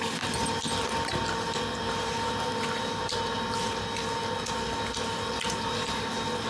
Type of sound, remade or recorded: recorded